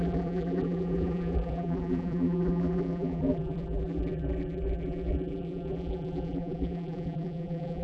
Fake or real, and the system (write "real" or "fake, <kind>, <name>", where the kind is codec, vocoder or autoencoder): fake, vocoder, BigVGAN v2